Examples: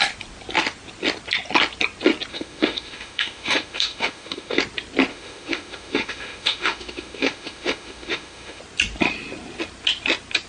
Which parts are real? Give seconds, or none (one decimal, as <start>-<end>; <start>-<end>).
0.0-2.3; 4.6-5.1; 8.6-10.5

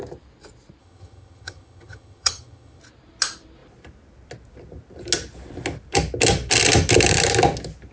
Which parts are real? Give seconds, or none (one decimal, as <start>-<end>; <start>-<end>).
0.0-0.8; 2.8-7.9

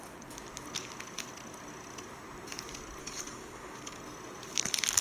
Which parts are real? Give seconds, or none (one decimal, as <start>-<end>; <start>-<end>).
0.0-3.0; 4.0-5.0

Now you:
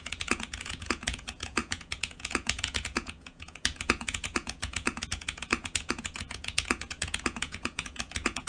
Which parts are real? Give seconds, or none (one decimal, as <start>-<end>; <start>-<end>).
none